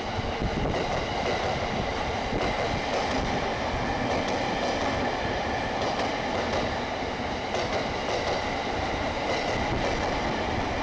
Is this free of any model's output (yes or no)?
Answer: yes